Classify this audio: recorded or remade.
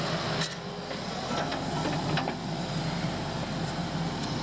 recorded